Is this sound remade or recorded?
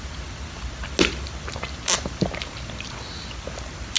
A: recorded